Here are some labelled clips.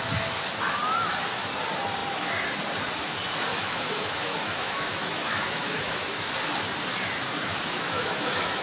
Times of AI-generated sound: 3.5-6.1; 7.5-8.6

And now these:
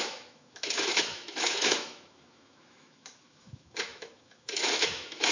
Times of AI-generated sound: 0.0-5.3